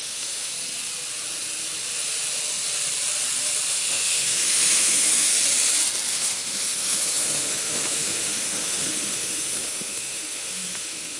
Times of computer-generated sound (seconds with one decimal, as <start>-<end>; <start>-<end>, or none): 0.0-0.5; 3.7-5.3; 6.1-11.2